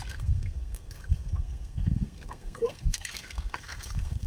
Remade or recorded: remade